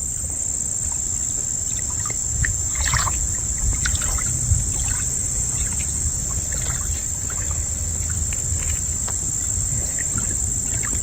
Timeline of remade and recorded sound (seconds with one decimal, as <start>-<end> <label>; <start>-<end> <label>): 0.0-2.2 recorded; 2.2-4.0 remade; 4.0-5.2 recorded; 5.2-6.3 remade; 6.3-11.0 recorded